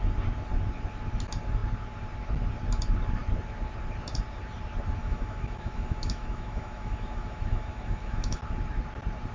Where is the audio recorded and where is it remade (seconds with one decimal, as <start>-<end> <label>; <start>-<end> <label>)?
0.0-5.0 recorded; 5.0-8.4 remade; 8.4-9.3 recorded